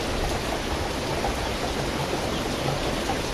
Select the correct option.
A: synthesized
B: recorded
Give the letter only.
B